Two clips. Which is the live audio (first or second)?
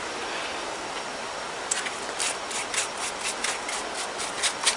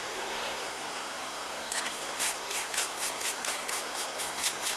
first